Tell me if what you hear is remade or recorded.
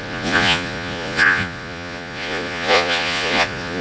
remade